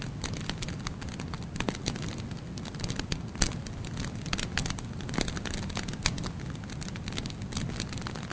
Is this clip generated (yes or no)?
no